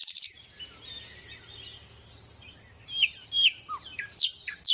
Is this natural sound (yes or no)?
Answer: yes